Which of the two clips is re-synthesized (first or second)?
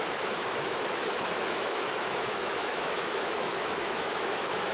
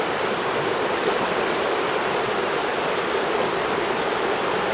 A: first